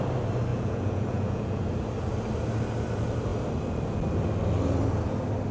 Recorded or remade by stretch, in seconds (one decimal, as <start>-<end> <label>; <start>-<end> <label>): 0.0-0.5 recorded; 0.5-1.6 remade; 1.6-5.5 recorded